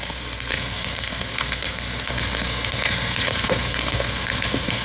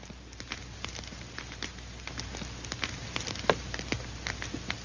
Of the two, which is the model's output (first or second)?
first